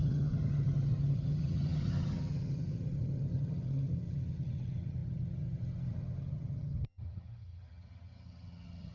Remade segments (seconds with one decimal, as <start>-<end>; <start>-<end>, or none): 0.0-8.9